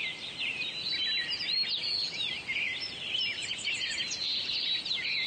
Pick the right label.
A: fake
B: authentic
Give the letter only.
B